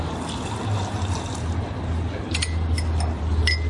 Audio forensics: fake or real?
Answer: real